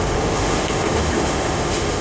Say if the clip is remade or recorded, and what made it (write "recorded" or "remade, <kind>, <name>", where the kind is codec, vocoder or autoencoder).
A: remade, autoencoder, DAC-VAE